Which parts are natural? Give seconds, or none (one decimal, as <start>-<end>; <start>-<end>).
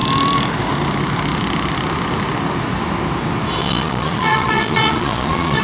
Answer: 0.0-3.6